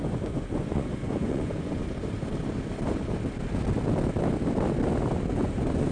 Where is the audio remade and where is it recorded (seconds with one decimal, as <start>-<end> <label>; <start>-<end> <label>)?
0.0-1.8 remade; 1.8-5.3 recorded; 5.3-5.9 remade